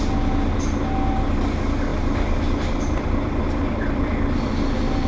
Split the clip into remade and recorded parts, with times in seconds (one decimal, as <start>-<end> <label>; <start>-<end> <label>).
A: 0.0-1.9 recorded; 1.9-4.5 remade; 4.5-5.1 recorded